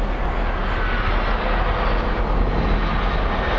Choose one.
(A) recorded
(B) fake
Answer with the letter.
A